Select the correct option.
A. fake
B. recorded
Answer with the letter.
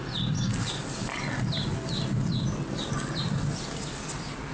B